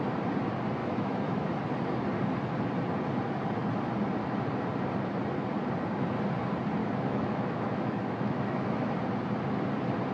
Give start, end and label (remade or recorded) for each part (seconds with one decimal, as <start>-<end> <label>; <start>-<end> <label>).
0.0-0.8 recorded; 0.8-1.6 remade; 1.6-6.8 recorded; 6.8-8.9 remade; 8.9-10.1 recorded